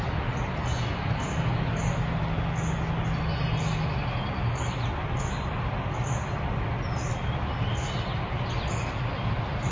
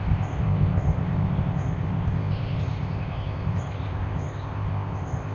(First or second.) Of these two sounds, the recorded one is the first